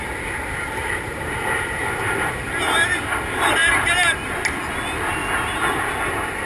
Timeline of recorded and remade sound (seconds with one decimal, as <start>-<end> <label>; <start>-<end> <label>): 0.0-0.8 recorded; 0.8-3.2 remade; 3.2-6.5 recorded